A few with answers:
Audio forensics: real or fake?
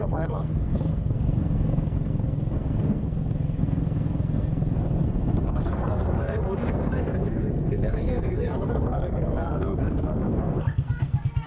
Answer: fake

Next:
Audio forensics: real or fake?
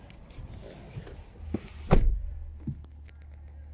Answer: real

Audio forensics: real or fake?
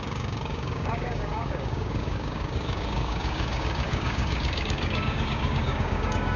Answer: fake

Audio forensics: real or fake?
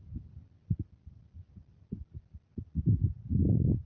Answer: real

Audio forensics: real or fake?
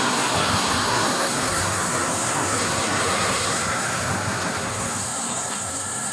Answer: fake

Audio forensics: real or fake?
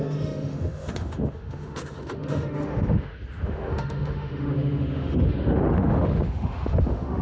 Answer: fake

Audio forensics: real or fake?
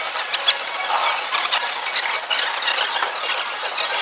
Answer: real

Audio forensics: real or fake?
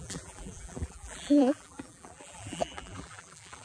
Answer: fake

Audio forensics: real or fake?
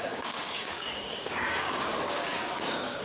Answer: fake